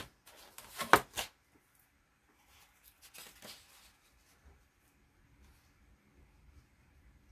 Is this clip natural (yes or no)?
yes